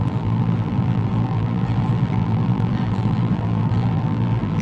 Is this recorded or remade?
remade